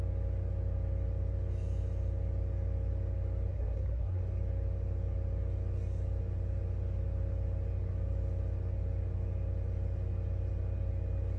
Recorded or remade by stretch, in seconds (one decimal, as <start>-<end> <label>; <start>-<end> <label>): 0.0-3.5 recorded; 3.5-4.2 remade; 4.2-11.4 recorded